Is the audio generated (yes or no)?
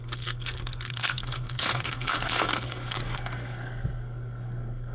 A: yes